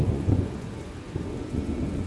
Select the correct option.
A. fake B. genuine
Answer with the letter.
A